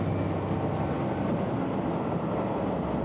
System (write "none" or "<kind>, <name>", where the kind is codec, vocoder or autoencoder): none